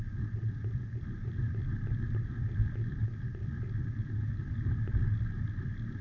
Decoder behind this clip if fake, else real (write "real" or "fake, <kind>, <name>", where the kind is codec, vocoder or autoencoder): real